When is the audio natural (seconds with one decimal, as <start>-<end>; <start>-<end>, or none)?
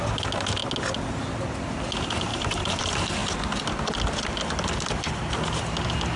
0.0-2.3; 2.8-6.2